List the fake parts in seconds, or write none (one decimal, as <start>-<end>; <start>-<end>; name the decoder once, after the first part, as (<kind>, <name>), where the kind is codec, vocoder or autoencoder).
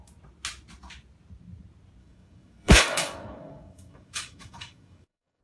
2.0-5.4 (codec, DAC)